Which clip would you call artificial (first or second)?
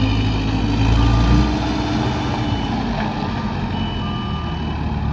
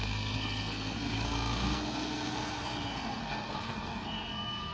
second